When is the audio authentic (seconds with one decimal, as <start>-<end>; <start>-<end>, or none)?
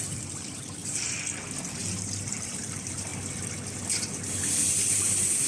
0.8-1.8; 3.1-4.7